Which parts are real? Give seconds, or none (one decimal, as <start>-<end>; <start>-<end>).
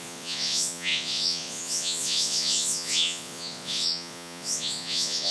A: none